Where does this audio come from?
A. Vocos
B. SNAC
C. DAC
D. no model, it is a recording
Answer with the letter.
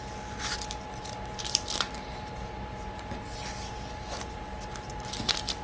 D